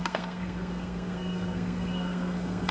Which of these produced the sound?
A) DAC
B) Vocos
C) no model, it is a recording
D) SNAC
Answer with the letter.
D